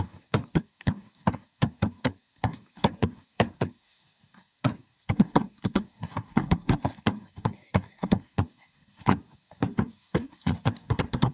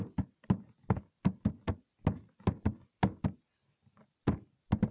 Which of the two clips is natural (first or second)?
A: second